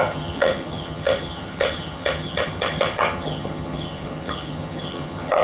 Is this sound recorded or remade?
remade